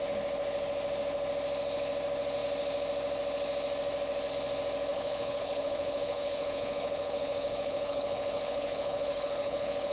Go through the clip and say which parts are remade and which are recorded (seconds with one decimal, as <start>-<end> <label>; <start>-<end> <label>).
0.0-4.9 recorded; 4.9-9.9 remade